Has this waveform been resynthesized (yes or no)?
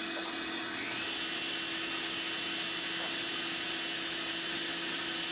no